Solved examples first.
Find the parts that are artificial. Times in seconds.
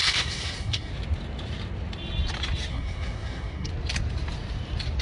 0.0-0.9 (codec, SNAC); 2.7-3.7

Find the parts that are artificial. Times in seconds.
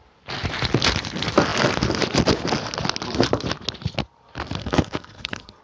4.6-5.6 (codec, SNAC)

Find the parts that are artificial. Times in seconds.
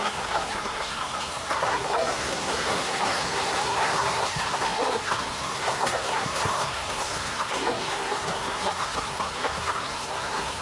0.0-10.6 (codec, SNAC)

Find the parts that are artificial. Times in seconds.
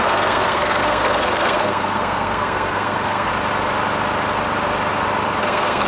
0.0-3.3 (codec, SNAC); 5.4-5.9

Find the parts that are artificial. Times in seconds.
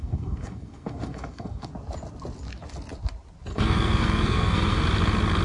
0.0-1.7 (codec, SNAC); 3.5-4.8